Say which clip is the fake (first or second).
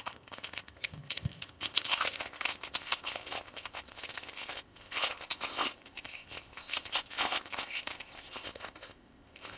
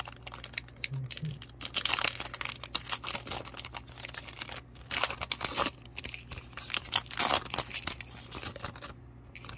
first